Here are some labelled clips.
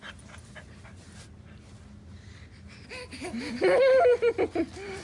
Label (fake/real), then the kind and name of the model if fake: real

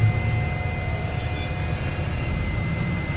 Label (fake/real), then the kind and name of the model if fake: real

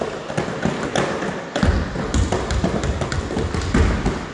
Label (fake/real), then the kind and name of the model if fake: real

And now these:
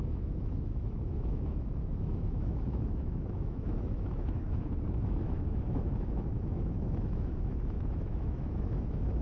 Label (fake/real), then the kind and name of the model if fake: fake, autoencoder, DAC-VAE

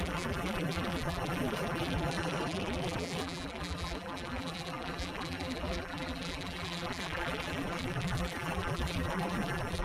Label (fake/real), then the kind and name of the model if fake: fake, vocoder, BigVGAN v2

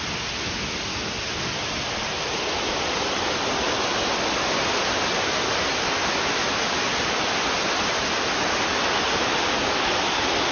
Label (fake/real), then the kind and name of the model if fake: real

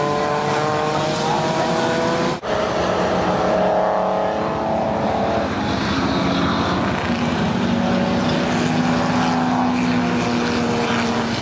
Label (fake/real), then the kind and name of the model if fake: real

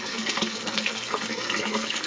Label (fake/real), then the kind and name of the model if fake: fake, codec, SNAC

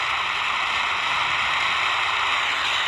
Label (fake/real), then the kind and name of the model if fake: real